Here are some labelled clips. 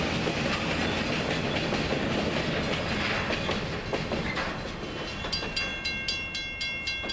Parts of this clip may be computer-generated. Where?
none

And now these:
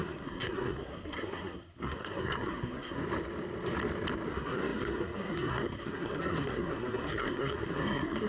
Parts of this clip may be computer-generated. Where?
0.0-3.0 (codec, SNAC); 4.3-8.3

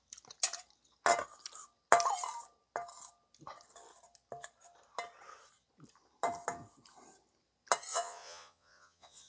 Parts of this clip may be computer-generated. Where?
7.9-9.3 (vocoder, Vocos)

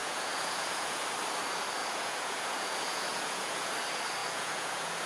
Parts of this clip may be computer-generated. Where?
0.0-1.0 (vocoder, Vocos); 1.8-3.7; 4.2-5.1

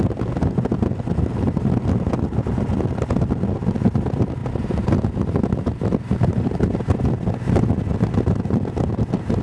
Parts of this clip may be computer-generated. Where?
4.4-7.1 (vocoder, BigVGAN v2)